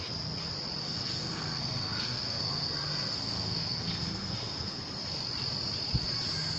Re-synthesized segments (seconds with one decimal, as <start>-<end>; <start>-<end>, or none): 0.8-4.8